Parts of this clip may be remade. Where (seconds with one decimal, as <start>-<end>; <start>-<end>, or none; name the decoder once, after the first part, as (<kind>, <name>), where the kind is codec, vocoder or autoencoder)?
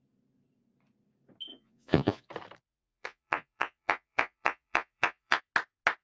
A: 1.5-2.3 (vocoder, Vocos); 2.7-5.4